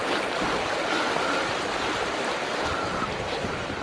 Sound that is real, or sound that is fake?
real